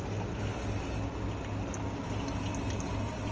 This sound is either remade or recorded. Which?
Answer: recorded